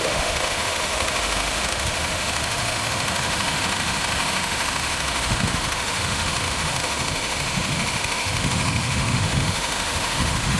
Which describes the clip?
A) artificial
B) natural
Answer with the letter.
A